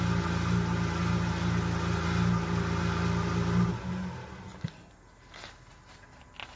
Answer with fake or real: real